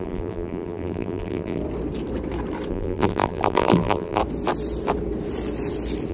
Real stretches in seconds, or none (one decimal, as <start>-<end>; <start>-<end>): 1.6-2.7; 4.2-6.1